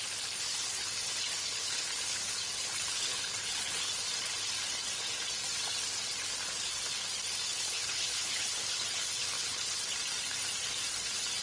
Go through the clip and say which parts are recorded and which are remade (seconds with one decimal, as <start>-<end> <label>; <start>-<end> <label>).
0.0-0.5 recorded; 0.5-4.0 remade; 4.0-7.5 recorded; 7.5-9.8 remade; 9.8-11.4 recorded